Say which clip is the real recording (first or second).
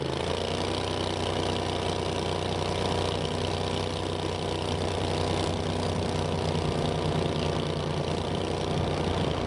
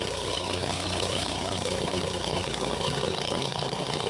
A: first